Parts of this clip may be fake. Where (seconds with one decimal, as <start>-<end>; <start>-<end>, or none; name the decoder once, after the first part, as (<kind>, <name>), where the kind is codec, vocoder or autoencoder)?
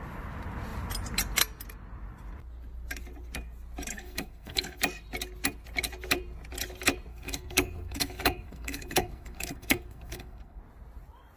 3.9-4.8 (codec, SNAC); 7.1-10.6